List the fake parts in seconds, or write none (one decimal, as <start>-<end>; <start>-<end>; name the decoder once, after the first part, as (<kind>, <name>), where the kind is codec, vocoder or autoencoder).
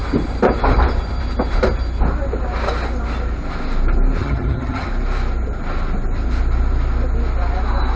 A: 4.2-4.9 (vocoder, HiFi-GAN)